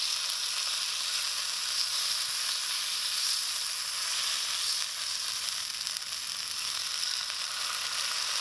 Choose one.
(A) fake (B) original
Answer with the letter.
B